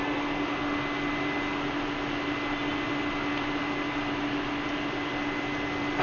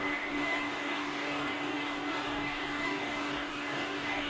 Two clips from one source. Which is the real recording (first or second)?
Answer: first